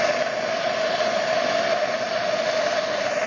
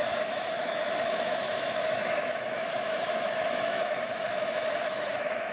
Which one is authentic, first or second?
first